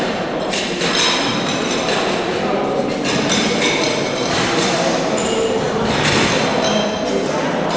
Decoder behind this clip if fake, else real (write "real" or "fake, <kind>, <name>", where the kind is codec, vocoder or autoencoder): real